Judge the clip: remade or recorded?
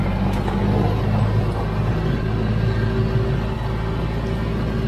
recorded